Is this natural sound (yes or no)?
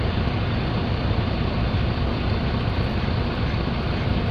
no